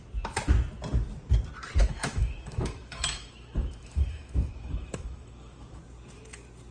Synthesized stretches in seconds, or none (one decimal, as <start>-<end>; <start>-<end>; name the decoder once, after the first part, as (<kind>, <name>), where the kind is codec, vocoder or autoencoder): 1.8-5.8 (autoencoder, DAC-VAE)